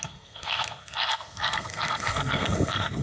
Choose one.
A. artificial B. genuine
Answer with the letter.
A